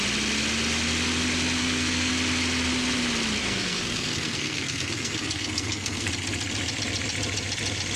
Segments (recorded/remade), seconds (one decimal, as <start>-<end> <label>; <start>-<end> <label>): 0.0-1.6 recorded; 1.6-2.1 remade; 2.1-3.4 recorded; 3.4-6.1 remade; 6.1-8.0 recorded